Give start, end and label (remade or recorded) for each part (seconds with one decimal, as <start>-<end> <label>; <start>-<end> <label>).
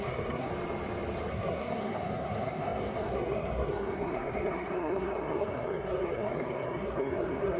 0.0-0.5 remade; 0.5-1.3 recorded; 1.3-7.6 remade